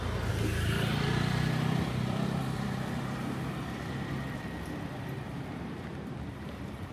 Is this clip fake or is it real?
fake